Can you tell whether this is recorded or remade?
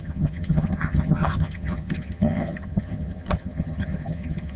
remade